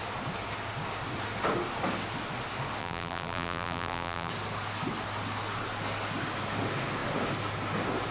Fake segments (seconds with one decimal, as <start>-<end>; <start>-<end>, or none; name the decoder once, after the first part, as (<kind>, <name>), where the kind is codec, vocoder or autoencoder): 2.8-4.3 (vocoder, BigVGAN v2)